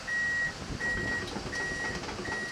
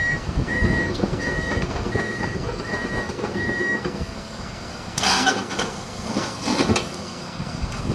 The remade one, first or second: second